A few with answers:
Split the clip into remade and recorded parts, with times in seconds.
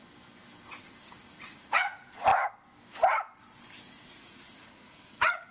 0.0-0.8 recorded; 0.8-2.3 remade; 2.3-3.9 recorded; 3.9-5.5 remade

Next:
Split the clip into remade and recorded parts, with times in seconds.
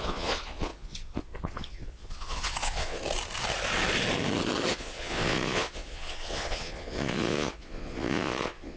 0.0-3.0 remade; 3.0-4.7 recorded; 4.7-8.8 remade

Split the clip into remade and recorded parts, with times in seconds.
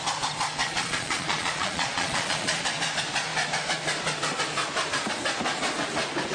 0.0-0.6 recorded; 0.6-2.6 remade; 2.6-6.3 recorded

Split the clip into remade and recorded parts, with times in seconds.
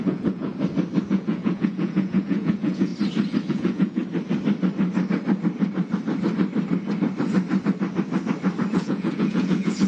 0.0-0.5 remade; 0.5-1.1 recorded; 1.1-2.9 remade; 2.9-3.5 recorded; 3.5-4.0 remade; 4.0-8.7 recorded; 8.7-9.9 remade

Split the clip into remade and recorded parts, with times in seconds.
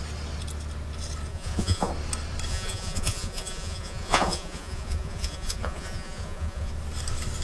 0.0-1.3 recorded; 1.3-1.9 remade; 1.9-2.5 recorded; 2.5-6.7 remade; 6.7-7.4 recorded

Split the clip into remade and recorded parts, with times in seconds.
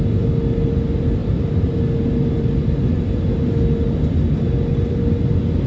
0.0-5.7 recorded